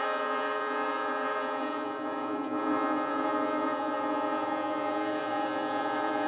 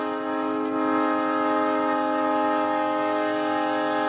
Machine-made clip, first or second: first